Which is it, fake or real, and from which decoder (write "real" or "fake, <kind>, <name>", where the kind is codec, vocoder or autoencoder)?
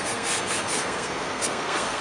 fake, codec, SNAC